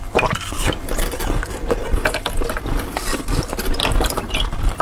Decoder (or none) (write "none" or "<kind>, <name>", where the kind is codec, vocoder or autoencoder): none